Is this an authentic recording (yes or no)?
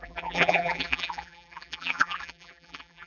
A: no